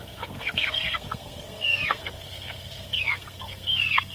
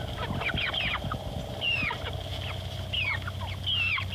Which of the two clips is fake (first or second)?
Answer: first